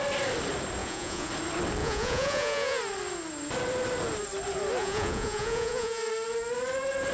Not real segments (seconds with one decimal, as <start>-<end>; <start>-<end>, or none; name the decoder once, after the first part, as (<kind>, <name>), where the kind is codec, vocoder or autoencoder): 0.8-1.3 (vocoder, Vocos); 1.8-2.8; 4.8-6.0